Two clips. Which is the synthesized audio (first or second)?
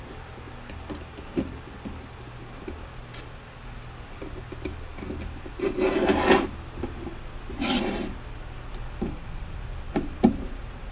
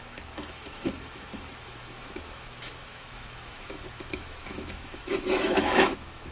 second